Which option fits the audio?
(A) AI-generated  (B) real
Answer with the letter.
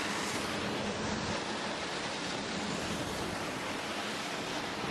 B